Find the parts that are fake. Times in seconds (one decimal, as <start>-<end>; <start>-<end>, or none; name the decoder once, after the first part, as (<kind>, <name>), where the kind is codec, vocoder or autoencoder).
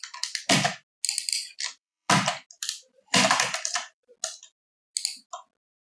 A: 1.3-2.1 (vocoder, BigVGAN v2); 2.6-4.1